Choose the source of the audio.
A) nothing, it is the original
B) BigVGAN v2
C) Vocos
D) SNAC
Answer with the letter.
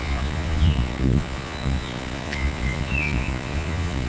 C